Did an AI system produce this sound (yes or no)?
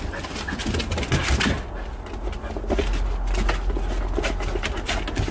no